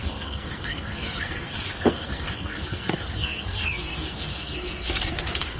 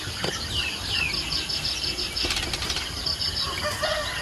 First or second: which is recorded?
second